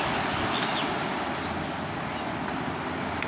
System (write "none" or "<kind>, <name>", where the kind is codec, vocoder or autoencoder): none